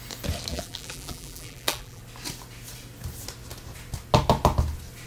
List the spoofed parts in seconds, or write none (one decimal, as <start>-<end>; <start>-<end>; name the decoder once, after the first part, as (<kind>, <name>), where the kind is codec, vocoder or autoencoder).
0.5-2.0 (vocoder, BigVGAN v2)